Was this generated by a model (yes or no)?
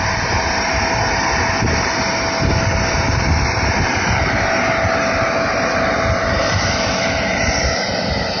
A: no